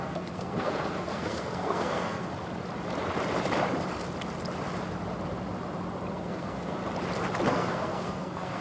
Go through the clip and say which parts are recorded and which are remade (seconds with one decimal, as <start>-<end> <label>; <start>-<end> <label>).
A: 0.0-2.3 remade; 2.3-6.1 recorded; 6.1-6.8 remade; 6.8-7.5 recorded; 7.5-8.6 remade